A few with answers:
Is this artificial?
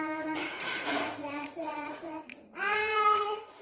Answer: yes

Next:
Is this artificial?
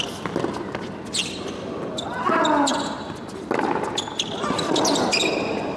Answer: no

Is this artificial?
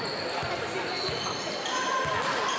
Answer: no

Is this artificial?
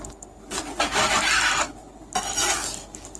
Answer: no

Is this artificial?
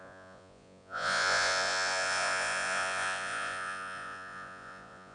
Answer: yes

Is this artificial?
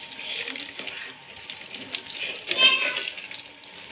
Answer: no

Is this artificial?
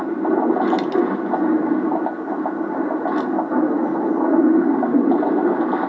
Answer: no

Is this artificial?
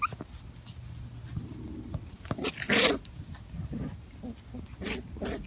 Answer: no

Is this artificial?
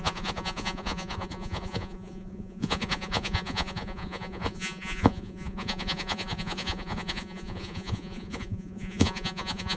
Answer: yes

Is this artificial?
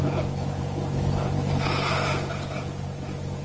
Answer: yes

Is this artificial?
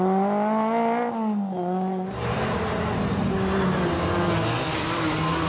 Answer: no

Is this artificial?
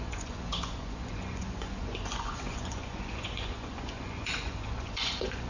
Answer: yes